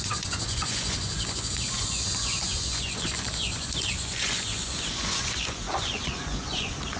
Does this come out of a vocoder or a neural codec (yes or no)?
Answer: yes